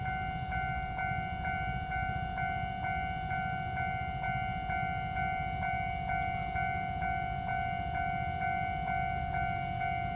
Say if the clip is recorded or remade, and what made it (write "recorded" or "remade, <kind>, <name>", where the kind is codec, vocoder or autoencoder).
recorded